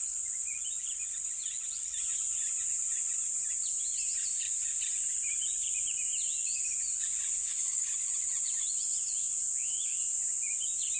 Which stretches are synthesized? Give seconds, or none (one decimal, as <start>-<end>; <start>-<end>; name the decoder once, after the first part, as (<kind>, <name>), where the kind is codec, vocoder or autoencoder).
7.4-7.9 (codec, DAC)